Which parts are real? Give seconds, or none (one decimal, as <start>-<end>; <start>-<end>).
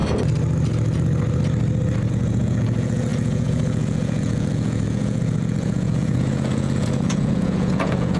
0.0-2.1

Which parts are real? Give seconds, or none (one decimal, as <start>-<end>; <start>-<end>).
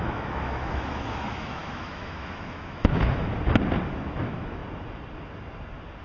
3.3-4.1; 4.6-6.0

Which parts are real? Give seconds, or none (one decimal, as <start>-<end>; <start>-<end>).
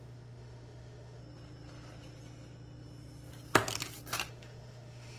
1.2-4.3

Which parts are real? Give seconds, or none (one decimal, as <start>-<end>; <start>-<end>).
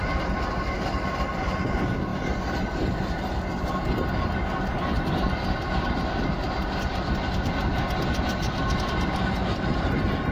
0.0-10.3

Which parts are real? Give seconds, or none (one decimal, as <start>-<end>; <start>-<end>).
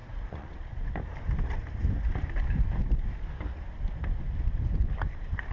0.9-5.5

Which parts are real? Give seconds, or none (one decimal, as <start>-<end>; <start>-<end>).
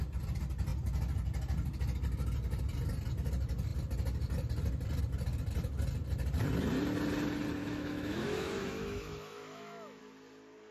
0.0-7.6; 10.0-10.7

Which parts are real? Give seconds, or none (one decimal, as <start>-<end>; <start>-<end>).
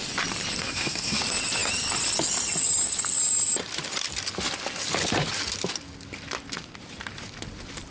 0.0-0.6; 1.2-7.9